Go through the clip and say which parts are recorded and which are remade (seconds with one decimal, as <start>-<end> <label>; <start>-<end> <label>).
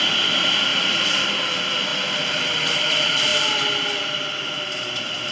0.0-5.3 recorded